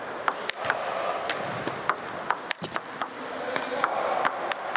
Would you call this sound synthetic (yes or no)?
no